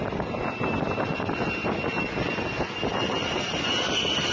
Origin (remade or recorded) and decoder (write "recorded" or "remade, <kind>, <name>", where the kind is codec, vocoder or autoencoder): recorded